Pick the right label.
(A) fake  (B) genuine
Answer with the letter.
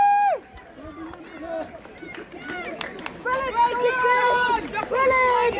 B